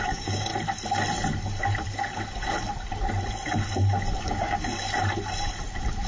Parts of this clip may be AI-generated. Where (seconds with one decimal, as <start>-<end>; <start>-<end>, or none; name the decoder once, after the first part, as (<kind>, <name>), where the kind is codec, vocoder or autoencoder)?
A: 0.0-0.5 (codec, DAC); 4.2-4.7